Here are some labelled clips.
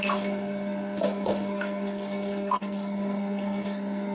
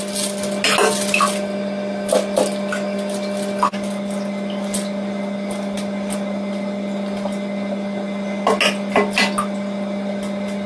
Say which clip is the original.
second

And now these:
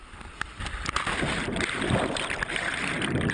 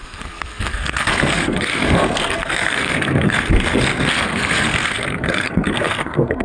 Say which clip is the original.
first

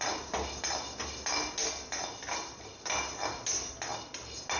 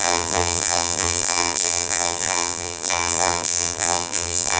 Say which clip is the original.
first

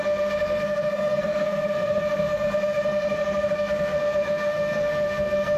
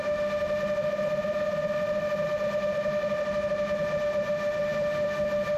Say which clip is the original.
second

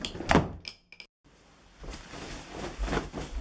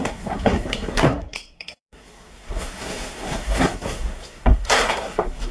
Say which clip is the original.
first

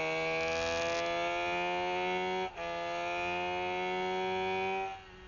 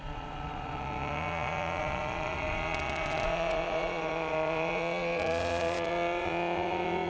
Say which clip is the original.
first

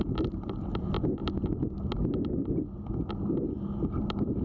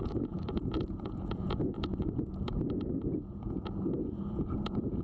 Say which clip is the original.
first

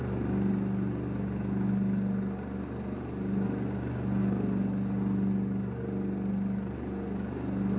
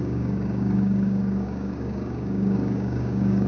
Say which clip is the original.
first